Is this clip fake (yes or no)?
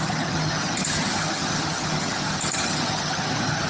yes